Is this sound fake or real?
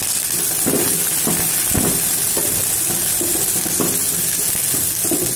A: real